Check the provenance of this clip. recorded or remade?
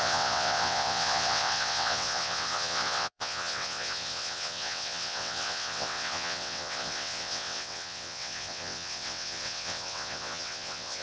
remade